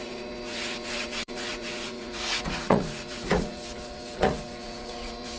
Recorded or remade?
remade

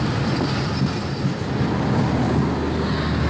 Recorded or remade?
recorded